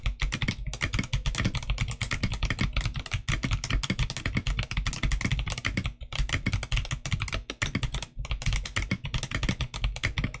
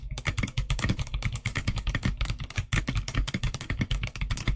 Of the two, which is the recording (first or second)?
first